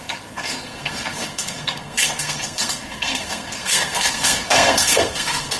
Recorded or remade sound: remade